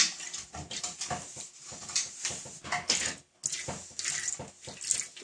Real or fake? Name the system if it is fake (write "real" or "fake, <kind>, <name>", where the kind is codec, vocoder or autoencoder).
real